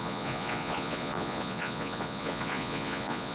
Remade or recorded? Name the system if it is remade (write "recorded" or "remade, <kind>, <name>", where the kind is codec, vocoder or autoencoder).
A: remade, vocoder, Vocos